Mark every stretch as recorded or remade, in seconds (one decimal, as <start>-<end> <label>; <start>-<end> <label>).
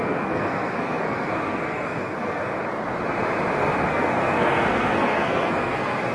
0.0-2.5 remade; 2.5-3.9 recorded; 3.9-6.1 remade